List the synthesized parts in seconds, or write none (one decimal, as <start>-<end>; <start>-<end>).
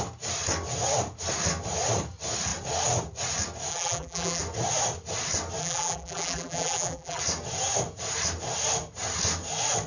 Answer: 3.7-4.4; 5.6-7.2